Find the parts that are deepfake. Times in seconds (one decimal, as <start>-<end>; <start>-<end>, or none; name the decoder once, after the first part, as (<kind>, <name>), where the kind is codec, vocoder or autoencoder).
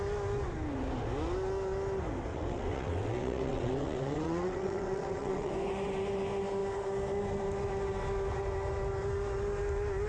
2.3-5.5 (vocoder, WaveNeXt)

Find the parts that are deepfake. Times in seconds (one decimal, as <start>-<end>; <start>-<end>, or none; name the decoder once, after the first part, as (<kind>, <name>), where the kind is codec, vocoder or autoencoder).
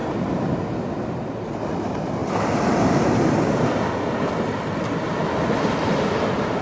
none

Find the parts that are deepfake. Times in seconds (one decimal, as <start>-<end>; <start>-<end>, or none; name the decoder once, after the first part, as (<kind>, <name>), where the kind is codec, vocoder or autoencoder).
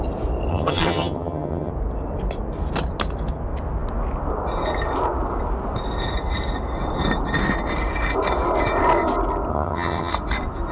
0.5-1.7 (vocoder, HiFi-GAN); 9.5-10.1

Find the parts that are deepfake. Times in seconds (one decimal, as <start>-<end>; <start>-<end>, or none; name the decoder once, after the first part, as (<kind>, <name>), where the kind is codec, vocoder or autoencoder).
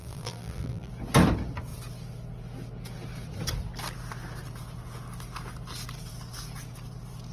0.0-0.9 (vocoder, BigVGAN v2)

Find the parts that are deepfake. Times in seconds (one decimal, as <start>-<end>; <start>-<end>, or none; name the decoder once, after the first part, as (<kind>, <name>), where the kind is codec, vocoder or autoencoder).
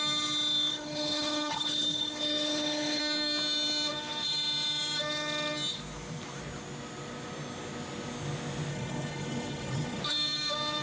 0.7-3.0 (codec, HILCodec); 8.7-10.0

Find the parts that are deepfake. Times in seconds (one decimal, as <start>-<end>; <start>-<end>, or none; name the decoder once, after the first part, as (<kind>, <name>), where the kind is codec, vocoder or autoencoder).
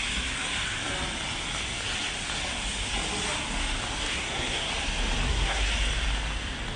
4.1-4.7 (codec, SNAC); 5.3-5.7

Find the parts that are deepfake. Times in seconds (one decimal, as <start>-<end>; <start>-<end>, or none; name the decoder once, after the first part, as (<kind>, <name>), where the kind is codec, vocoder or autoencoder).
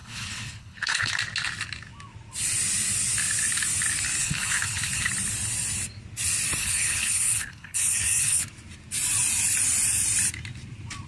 0.0-1.1 (codec, HILCodec); 4.2-5.1; 6.6-8.4